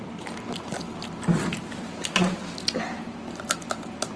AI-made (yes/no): no